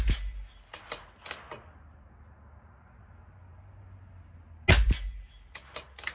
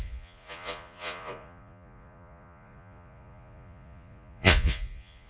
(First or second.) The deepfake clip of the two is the second